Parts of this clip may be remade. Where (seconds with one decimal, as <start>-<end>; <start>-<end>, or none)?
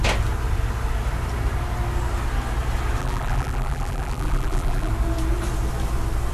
3.0-4.9